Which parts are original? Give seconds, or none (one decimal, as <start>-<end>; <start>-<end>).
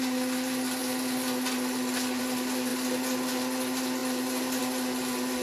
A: 0.0-5.4